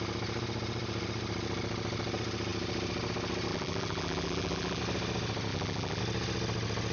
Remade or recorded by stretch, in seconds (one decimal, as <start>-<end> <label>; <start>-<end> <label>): 0.0-3.5 recorded; 3.5-4.8 remade; 4.8-5.5 recorded; 5.5-6.0 remade; 6.0-6.9 recorded